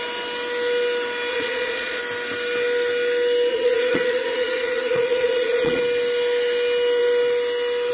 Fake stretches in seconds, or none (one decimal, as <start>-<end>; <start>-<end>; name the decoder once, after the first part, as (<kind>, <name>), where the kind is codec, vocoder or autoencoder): 1.3-2.0 (vocoder, Vocos); 3.5-5.8